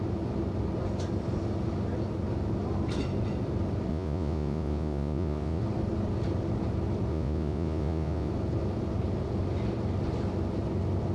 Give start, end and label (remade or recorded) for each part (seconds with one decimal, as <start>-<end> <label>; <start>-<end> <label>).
0.0-3.9 recorded; 3.9-5.6 remade; 5.6-7.1 recorded; 7.1-8.3 remade; 8.3-11.1 recorded